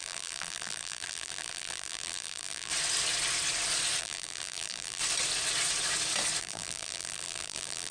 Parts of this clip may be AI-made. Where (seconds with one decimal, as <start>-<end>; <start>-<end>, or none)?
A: 0.0-2.7; 4.0-5.0; 6.4-7.9